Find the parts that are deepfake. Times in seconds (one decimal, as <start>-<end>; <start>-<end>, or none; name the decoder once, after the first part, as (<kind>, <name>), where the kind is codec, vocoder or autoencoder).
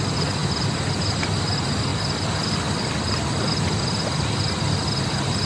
none